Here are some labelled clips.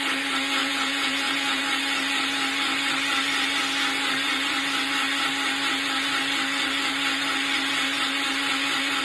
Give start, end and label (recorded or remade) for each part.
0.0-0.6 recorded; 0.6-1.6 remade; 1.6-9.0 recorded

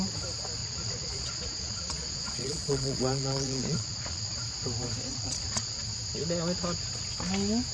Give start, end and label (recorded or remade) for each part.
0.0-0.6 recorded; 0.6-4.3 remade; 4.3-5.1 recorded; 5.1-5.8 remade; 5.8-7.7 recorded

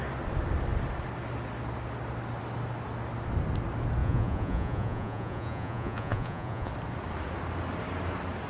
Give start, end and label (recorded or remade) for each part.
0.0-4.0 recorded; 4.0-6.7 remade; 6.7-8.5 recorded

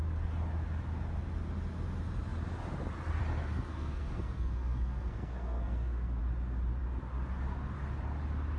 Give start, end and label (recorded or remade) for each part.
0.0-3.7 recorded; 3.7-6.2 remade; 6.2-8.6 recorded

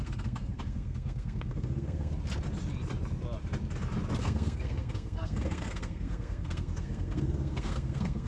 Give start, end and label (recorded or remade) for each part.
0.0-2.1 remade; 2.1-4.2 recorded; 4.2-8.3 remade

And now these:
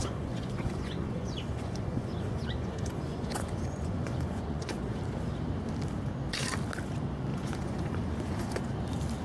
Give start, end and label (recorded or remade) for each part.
0.0-5.0 remade; 5.0-7.3 recorded; 7.3-8.6 remade; 8.6-9.2 recorded